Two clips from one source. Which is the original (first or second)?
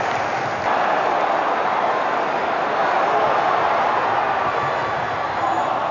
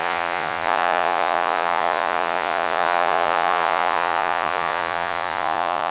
first